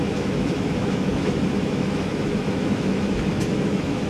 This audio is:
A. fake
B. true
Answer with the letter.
A